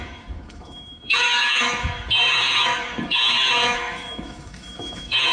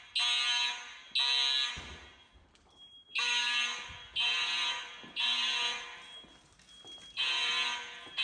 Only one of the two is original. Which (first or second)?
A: second